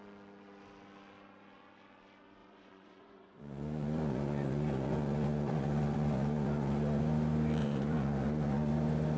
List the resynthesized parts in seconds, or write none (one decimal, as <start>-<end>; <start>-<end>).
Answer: 2.4-7.0; 7.6-8.7